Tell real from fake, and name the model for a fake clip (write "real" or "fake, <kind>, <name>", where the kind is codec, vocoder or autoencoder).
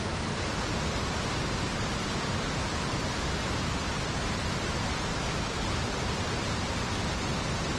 real